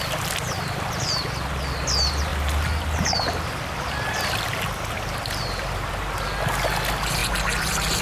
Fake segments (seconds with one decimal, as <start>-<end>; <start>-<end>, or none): none